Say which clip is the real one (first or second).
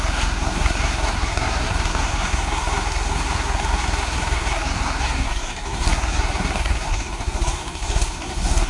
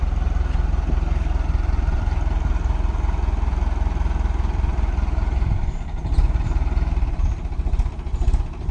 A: second